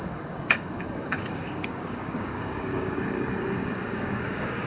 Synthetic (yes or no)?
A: yes